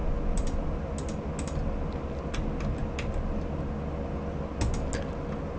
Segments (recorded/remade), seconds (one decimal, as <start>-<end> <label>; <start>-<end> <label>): 0.0-5.6 recorded